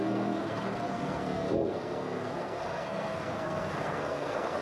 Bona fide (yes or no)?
no